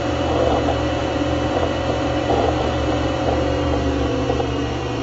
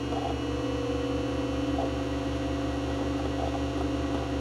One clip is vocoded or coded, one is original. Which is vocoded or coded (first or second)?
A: first